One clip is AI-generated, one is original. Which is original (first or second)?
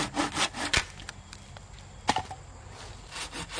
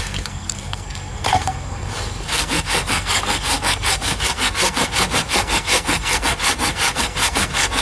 first